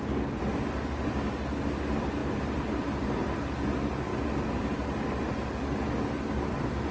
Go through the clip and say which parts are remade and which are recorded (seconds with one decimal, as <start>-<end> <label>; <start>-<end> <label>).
0.0-6.9 recorded